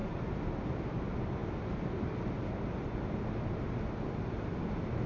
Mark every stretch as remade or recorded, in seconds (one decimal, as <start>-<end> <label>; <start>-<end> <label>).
0.0-0.6 remade; 0.6-5.1 recorded